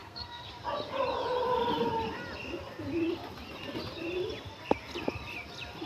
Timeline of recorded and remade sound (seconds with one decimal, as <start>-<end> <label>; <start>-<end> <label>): 0.0-0.5 remade; 0.5-5.9 recorded